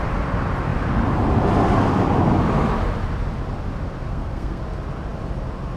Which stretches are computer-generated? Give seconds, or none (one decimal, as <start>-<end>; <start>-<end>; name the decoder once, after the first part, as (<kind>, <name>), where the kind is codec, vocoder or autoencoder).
4.1-4.6 (codec, SNAC)